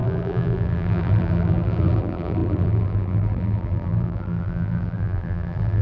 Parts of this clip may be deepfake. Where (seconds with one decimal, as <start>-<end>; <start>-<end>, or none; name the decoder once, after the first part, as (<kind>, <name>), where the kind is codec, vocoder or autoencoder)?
0.0-5.8 (vocoder, BigVGAN v2)

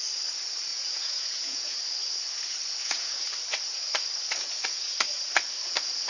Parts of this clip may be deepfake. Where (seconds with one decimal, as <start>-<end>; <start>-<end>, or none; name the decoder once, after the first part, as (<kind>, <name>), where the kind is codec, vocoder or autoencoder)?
0.7-1.8 (vocoder, Vocos); 2.8-3.3

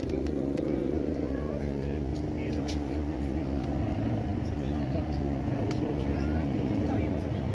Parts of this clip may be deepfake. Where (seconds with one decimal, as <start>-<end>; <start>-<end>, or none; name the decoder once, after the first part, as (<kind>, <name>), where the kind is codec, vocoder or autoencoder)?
0.0-2.1 (vocoder, Vocos); 2.6-7.5

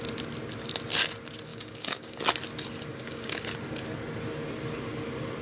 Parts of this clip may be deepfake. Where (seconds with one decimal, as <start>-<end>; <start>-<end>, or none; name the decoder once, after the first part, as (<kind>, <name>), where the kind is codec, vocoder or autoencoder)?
1.5-2.2 (codec, DAC); 2.9-3.4

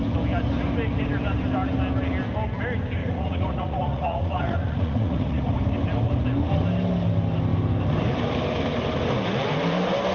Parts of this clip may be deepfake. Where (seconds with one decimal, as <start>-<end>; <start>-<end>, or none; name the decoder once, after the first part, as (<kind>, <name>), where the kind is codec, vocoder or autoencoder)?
3.0-5.5 (vocoder, Vocos)

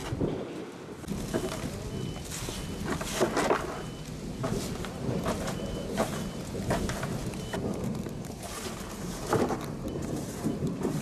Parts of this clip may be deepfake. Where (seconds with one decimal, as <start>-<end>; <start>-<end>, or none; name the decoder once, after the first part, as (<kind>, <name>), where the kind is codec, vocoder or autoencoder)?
4.4-11.0 (vocoder, BigVGAN v2)

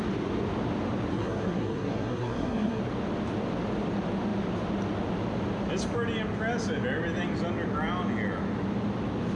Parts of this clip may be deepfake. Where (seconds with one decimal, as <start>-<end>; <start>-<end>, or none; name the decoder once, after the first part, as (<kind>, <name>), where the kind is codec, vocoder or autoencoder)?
1.1-2.8 (codec, SNAC)

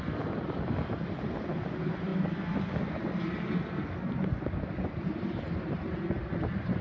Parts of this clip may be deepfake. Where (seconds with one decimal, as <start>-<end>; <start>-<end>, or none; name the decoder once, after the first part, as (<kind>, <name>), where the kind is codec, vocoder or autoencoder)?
0.0-2.1 (vocoder, BigVGAN v2); 5.1-6.8